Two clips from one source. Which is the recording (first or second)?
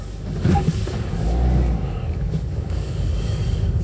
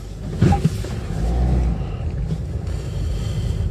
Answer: second